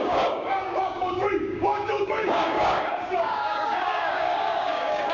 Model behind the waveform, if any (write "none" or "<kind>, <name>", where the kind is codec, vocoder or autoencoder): codec, DAC